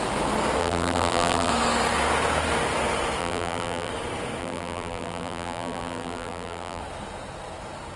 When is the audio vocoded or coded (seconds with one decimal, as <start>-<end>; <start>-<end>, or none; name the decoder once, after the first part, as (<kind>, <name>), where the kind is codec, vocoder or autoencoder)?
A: 0.6-1.5 (vocoder, BigVGAN v2); 3.2-3.9; 4.4-6.8